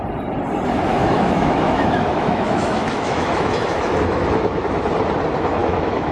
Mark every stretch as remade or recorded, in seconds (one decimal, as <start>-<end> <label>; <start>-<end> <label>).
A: 0.0-0.9 recorded; 0.9-4.6 remade; 4.6-5.6 recorded; 5.6-6.1 remade